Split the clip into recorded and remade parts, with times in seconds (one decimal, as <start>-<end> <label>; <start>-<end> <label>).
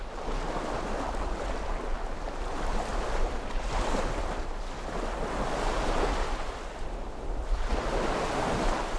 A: 0.0-9.0 recorded